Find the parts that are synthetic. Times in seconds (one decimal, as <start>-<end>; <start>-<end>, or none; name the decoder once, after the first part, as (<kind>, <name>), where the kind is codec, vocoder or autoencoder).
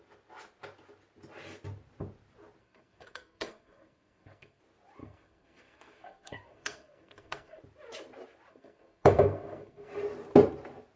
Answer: 2.6-4.6 (codec, SNAC); 5.0-7.6; 8.5-9.9